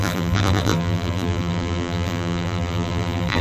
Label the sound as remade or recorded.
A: remade